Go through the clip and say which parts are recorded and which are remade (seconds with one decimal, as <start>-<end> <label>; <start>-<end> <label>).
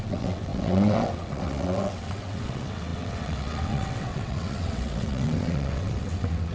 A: 0.0-6.5 remade